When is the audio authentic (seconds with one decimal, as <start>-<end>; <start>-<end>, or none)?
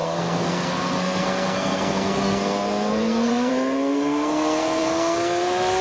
none